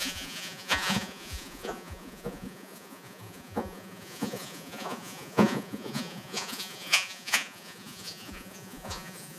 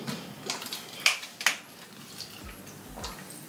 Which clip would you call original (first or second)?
second